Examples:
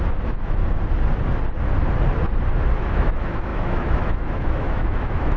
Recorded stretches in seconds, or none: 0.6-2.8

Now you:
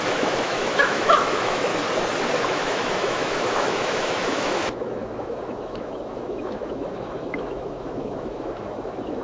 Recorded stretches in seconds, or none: 1.7-2.5

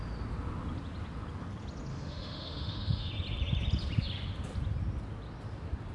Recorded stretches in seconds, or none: 0.0-1.9; 3.1-5.9